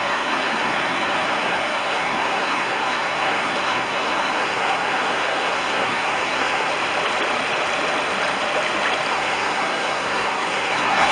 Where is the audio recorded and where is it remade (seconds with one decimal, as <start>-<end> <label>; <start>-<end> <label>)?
0.0-6.7 remade; 6.7-9.1 recorded; 9.1-11.1 remade